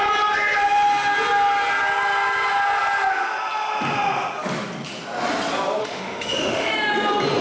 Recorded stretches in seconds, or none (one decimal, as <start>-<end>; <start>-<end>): 0.0-5.8; 6.7-7.4